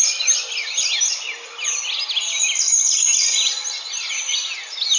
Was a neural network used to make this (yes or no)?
no